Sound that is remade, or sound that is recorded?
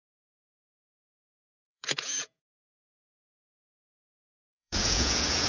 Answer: remade